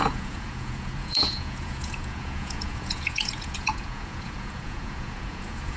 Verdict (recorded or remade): remade